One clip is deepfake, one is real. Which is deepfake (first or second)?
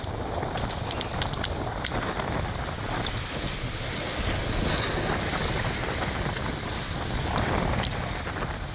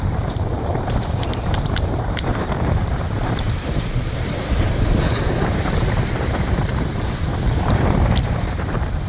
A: second